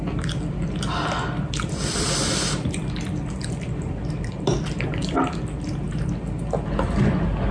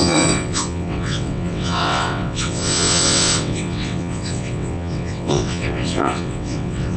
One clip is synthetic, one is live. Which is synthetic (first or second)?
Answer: second